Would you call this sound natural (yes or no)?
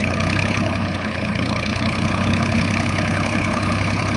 no